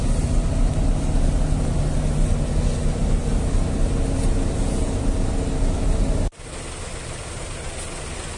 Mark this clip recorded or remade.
recorded